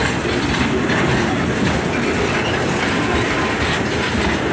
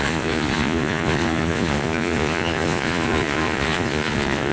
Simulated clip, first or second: second